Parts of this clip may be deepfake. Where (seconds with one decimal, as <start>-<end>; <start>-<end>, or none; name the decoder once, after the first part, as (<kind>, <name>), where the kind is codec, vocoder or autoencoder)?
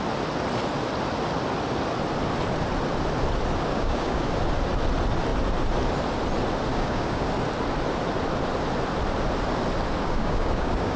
3.7-4.2 (codec, DAC); 6.7-7.3; 10.0-11.0